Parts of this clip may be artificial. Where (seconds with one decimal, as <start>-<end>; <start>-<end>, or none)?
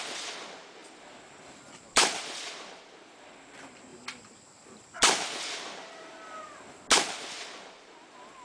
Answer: 0.8-2.8; 3.9-6.4